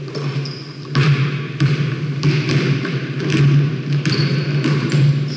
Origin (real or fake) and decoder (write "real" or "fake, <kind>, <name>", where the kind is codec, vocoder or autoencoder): real